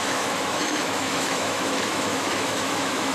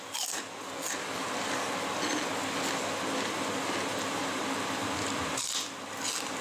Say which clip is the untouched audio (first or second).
second